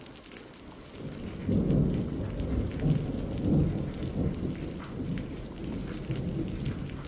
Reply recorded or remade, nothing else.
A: recorded